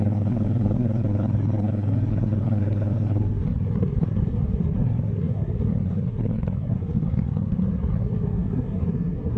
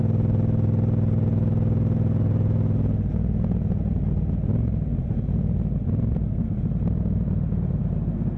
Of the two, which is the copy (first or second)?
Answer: first